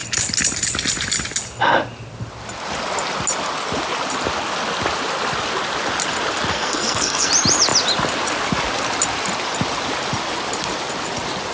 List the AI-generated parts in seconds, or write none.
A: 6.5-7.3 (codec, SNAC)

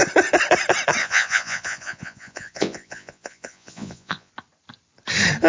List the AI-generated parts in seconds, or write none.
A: 1.0-4.3 (vocoder, Vocos)

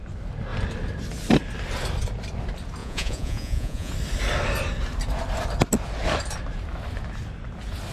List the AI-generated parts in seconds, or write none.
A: 2.8-3.9 (vocoder, Vocos)

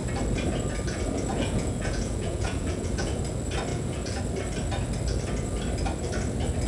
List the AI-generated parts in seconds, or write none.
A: 1.3-3.2 (vocoder, Vocos); 3.7-4.2

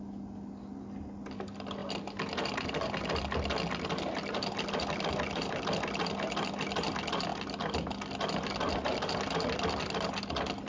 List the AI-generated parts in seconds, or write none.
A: none